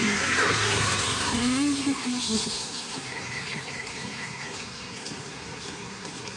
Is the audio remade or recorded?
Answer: remade